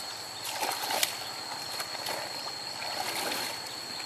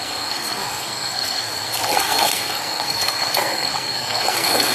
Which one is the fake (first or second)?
second